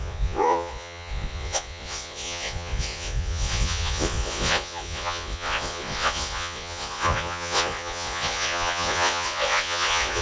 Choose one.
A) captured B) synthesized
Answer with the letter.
B